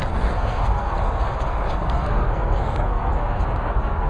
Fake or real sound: fake